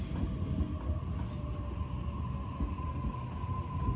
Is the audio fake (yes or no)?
no